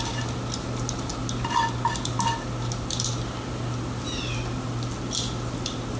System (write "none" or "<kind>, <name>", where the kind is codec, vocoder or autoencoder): none